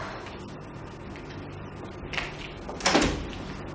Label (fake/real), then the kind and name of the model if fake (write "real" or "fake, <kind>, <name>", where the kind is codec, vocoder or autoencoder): real